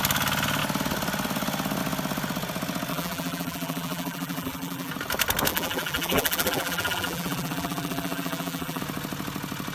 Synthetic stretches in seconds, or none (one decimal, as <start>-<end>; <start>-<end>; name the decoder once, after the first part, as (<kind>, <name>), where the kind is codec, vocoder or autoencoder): 2.9-4.9 (vocoder, BigVGAN v2); 5.5-8.8